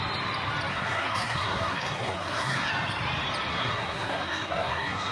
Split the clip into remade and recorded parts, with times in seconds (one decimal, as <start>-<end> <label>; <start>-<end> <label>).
0.0-0.7 recorded; 0.7-2.7 remade; 2.7-3.5 recorded; 3.5-5.1 remade